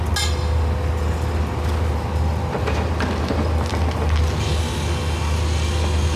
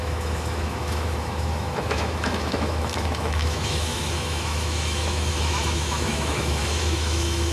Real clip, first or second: first